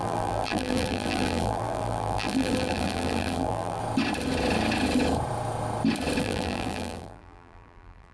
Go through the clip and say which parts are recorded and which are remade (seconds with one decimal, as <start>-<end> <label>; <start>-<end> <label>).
0.0-3.8 remade; 3.8-6.2 recorded; 6.2-8.1 remade